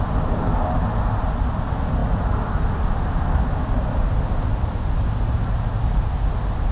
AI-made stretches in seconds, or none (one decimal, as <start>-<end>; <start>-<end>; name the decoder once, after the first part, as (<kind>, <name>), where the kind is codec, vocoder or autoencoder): none